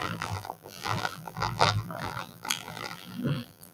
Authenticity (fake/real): fake